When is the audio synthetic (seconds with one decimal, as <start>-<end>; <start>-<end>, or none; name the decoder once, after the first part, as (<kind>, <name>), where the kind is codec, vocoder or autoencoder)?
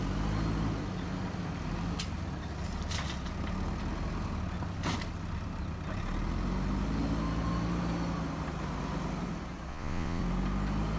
9.7-10.2 (vocoder, Vocos)